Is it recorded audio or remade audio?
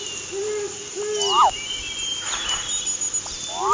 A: recorded